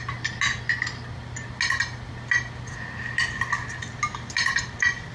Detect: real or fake real